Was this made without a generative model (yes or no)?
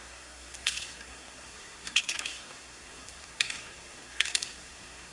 no